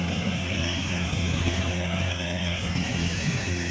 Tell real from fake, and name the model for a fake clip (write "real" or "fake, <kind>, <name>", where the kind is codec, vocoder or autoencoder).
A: fake, codec, SNAC